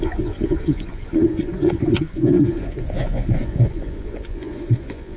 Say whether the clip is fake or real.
fake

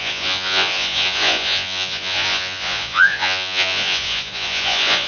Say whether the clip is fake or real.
fake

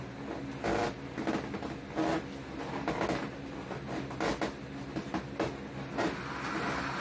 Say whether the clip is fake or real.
real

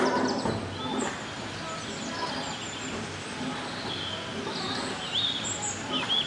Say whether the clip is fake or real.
real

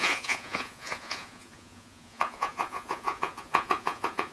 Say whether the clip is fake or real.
fake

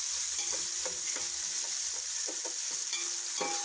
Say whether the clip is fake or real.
real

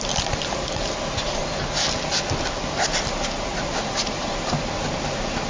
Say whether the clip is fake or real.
real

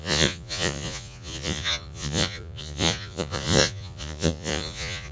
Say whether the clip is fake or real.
fake